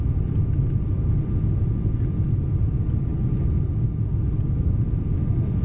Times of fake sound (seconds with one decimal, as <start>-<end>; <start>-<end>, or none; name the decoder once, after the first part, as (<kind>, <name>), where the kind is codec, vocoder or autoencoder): none